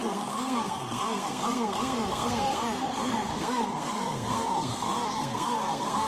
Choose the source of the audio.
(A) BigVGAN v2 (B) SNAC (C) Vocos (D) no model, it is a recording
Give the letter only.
B